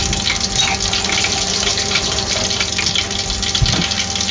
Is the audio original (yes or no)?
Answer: yes